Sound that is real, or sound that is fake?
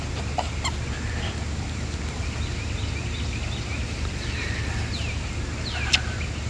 real